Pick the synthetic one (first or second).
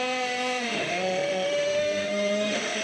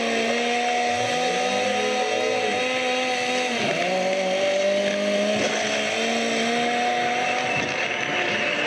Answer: first